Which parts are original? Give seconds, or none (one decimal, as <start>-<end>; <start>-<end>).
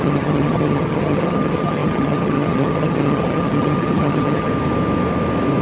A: 4.5-5.6